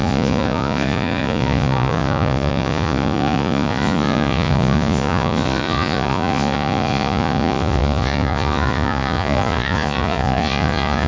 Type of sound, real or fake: fake